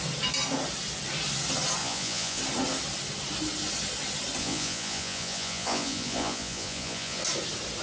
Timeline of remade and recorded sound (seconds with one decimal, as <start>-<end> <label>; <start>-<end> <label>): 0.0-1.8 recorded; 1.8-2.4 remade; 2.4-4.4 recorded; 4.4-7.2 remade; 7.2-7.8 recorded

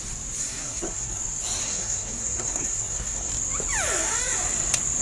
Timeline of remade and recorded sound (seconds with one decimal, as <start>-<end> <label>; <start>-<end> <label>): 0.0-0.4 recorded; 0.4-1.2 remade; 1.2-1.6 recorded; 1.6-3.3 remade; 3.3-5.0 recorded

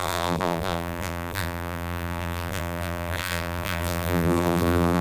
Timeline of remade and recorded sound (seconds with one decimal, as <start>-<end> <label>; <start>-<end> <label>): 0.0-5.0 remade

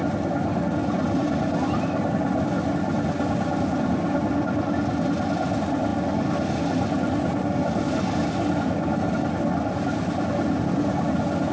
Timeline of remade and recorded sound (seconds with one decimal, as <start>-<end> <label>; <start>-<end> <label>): 0.0-1.2 recorded; 1.2-2.1 remade; 2.1-11.5 recorded

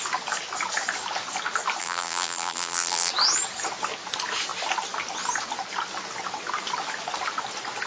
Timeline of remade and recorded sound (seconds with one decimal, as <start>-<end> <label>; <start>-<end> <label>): 0.0-1.8 recorded; 1.8-3.1 remade; 3.1-7.9 recorded

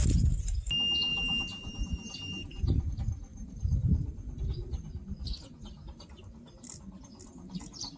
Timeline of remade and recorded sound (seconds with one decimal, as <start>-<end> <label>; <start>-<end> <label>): 0.0-1.1 recorded; 1.1-2.9 remade; 2.9-3.3 recorded; 3.3-4.4 remade; 4.4-8.0 recorded

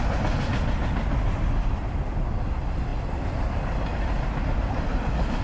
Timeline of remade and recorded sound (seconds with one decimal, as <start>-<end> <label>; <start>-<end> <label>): 0.0-5.4 recorded

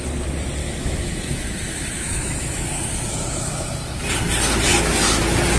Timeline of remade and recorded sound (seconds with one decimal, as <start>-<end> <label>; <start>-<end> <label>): 0.0-0.6 recorded; 0.6-4.0 remade; 4.0-5.6 recorded